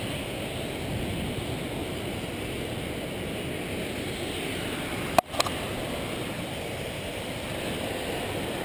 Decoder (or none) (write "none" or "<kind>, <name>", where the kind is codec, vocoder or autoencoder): none